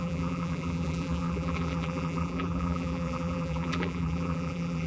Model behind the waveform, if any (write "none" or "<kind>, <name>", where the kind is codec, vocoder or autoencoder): vocoder, BigVGAN v2